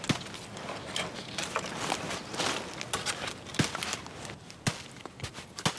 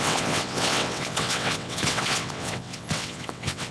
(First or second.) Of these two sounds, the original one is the first